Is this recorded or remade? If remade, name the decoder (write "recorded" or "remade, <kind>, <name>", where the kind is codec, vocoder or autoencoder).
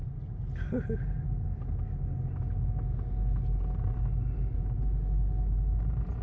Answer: recorded